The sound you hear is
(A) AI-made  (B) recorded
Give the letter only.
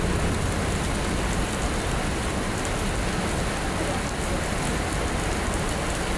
B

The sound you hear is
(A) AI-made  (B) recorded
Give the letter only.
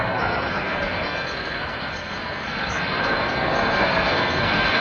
A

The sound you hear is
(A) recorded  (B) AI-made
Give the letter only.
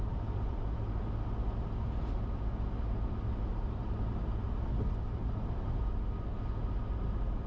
A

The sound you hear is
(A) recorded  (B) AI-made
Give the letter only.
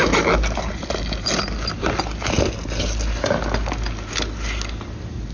A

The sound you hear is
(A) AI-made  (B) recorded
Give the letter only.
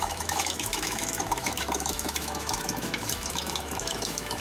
A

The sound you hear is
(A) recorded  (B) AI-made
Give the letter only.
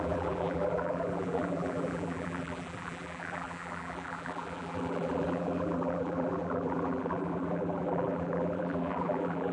B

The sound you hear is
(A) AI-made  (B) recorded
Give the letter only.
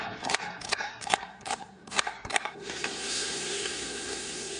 A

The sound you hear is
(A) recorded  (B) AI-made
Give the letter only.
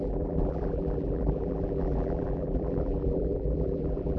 B